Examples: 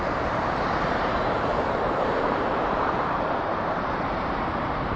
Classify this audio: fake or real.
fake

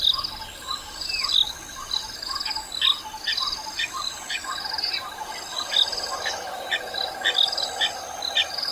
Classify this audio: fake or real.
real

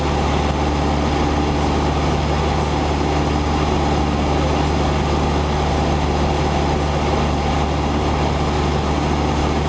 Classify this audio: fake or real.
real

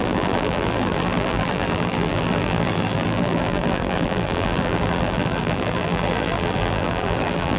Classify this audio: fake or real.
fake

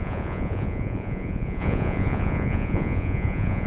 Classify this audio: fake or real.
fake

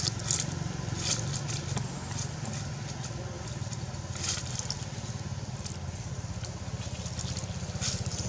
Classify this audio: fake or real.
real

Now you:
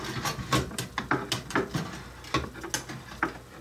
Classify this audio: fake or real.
real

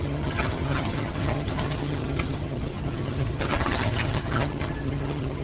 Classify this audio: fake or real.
fake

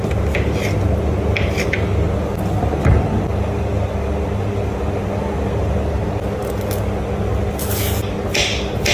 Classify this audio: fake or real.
real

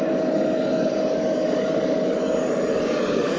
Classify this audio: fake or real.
fake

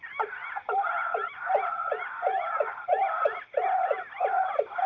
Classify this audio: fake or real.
real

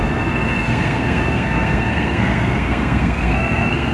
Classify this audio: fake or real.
fake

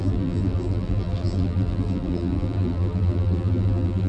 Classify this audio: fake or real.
fake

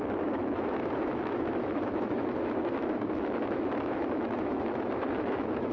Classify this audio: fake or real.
fake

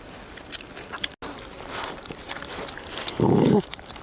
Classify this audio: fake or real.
real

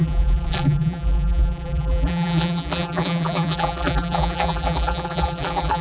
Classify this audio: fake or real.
fake